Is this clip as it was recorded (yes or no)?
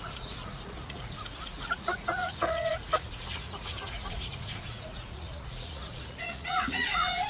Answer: no